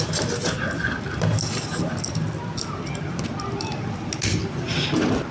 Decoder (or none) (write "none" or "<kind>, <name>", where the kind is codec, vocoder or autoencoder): none